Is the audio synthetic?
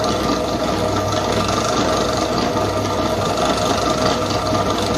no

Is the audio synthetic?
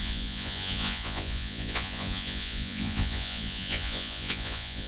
yes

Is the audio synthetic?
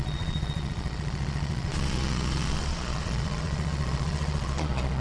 yes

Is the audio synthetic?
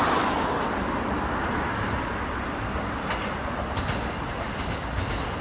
no